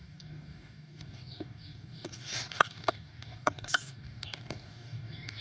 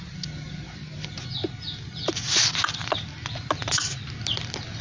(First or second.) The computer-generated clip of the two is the first